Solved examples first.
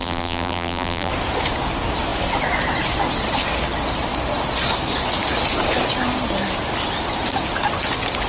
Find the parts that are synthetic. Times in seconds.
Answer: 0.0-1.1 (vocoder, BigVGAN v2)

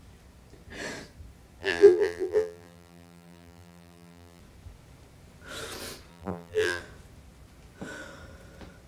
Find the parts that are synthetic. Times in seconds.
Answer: 1.6-4.4 (vocoder, BigVGAN v2); 6.1-6.8

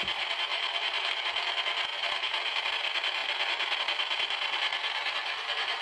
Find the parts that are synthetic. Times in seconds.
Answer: 0.5-1.5 (vocoder, BigVGAN v2); 1.9-2.7

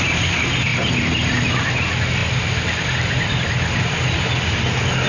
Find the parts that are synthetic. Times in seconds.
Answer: 0.7-1.5 (vocoder, BigVGAN v2)

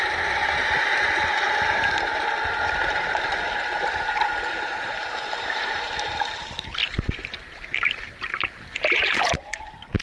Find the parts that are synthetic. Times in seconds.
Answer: 0.0-0.4 (vocoder, BigVGAN v2); 4.5-10.0